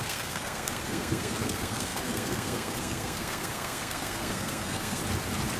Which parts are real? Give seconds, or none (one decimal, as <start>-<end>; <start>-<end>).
5.0-5.6